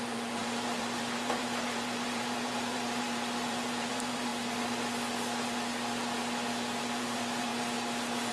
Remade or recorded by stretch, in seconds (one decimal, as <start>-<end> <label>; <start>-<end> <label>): 0.0-4.3 remade; 4.3-6.8 recorded; 6.8-7.5 remade; 7.5-8.3 recorded